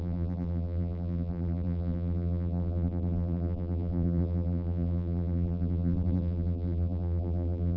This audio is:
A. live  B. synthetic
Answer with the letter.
B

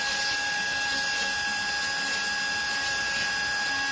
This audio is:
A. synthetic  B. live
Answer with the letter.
B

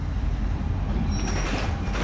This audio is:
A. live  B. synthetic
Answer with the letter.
B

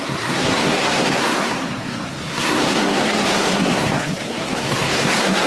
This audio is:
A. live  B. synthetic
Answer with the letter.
B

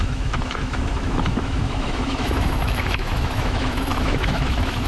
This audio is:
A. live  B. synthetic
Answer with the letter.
B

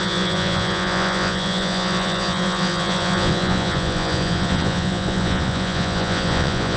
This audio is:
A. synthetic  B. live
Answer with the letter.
A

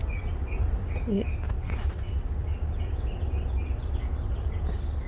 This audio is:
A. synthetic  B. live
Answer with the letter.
B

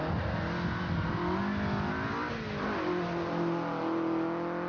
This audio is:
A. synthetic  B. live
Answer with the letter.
B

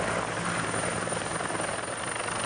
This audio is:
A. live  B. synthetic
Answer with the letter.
A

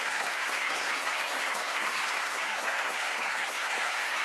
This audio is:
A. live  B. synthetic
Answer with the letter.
B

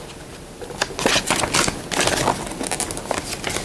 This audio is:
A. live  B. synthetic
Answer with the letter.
A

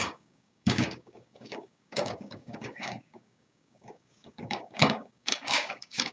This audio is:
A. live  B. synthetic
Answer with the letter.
B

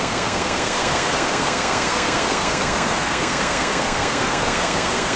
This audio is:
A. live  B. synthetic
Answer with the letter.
B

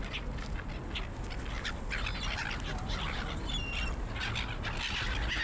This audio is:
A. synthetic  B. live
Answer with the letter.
B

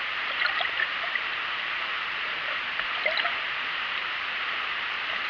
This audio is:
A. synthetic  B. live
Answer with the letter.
A